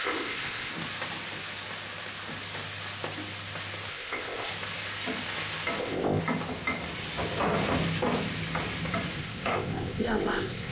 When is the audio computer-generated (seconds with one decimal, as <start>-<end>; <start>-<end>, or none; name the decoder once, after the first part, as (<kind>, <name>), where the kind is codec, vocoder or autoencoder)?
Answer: 0.0-0.7 (codec, ZipCodec); 3.9-4.5; 5.8-6.2; 9.2-10.7